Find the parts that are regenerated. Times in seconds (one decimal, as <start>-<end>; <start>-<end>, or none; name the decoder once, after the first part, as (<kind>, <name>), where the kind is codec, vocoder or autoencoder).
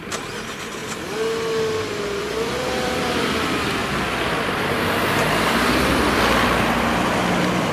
0.0-0.8 (vocoder, BigVGAN v2); 1.8-3.8; 6.0-7.7